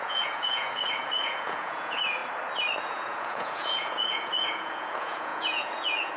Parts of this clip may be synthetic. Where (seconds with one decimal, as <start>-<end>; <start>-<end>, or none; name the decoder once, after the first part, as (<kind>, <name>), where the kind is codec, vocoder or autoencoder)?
0.0-2.2 (vocoder, Vocos); 2.8-6.2